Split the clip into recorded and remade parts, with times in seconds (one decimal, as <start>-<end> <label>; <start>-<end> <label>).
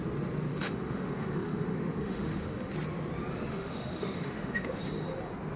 0.0-0.5 recorded; 0.5-2.7 remade; 2.7-3.5 recorded; 3.5-4.8 remade; 4.8-5.6 recorded